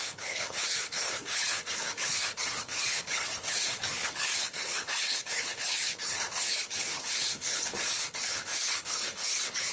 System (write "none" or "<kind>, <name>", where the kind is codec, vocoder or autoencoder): codec, HILCodec